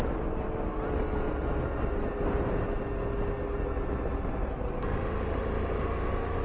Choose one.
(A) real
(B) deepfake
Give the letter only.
A